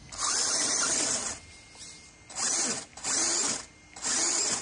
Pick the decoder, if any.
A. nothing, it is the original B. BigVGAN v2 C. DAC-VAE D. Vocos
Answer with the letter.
A